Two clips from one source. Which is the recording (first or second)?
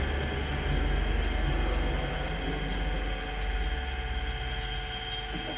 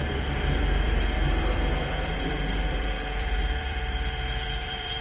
first